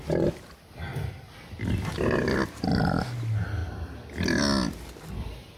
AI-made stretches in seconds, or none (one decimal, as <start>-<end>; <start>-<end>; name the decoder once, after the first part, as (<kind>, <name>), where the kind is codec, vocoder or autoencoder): none